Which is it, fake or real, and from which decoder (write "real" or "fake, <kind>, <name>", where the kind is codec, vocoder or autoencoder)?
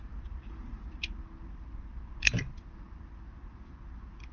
real